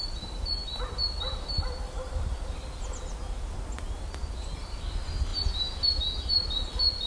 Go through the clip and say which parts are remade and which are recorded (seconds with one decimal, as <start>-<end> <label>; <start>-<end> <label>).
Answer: 0.0-7.1 recorded